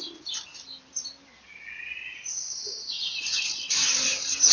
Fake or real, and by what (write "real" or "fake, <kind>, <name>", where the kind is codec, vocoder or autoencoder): real